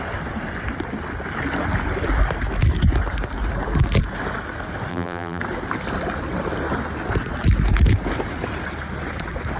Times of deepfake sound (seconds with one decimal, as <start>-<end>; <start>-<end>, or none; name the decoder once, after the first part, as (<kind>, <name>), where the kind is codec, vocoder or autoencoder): 4.9-5.4 (vocoder, BigVGAN v2)